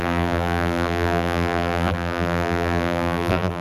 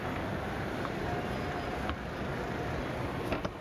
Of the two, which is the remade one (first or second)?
first